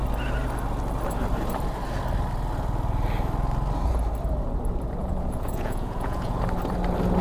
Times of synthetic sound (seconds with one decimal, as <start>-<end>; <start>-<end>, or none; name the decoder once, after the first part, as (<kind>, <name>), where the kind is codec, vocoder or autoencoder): 5.0-6.4 (vocoder, Vocos)